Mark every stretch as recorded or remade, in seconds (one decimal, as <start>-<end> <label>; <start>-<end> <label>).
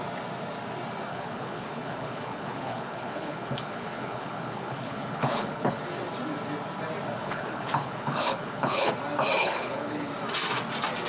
0.0-1.1 recorded; 1.1-5.8 remade; 5.8-7.2 recorded; 7.2-8.9 remade; 8.9-9.4 recorded; 9.4-10.1 remade; 10.1-11.1 recorded